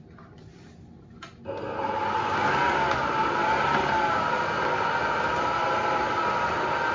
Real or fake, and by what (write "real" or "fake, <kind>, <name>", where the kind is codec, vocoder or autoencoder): real